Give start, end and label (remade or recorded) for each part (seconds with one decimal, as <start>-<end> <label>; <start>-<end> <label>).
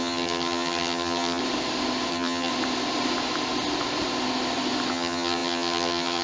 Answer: 0.0-1.4 remade; 1.4-2.1 recorded; 2.1-2.5 remade; 2.5-4.9 recorded; 4.9-6.2 remade